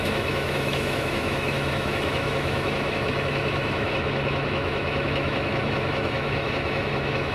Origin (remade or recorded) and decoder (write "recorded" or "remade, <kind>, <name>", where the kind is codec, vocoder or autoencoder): remade, autoencoder, DAC-VAE